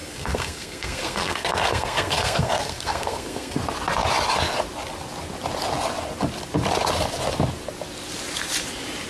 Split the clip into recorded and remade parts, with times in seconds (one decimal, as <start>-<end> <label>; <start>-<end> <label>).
0.0-3.6 remade; 3.6-9.1 recorded